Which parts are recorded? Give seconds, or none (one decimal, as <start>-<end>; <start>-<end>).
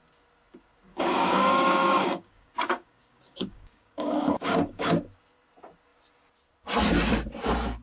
0.0-0.9; 4.9-7.8